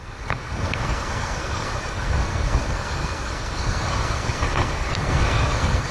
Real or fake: fake